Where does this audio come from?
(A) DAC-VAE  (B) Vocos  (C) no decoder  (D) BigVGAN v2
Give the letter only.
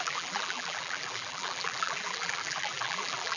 D